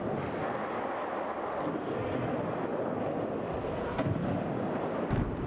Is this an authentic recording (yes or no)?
yes